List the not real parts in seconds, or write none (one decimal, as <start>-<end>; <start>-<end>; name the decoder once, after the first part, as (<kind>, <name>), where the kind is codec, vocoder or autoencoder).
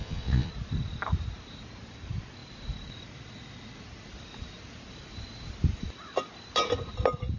0.0-0.5 (vocoder, Vocos)